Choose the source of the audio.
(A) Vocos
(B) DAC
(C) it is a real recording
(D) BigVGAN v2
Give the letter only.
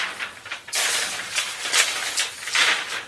C